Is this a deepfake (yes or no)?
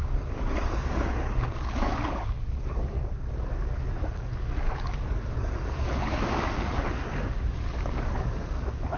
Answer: yes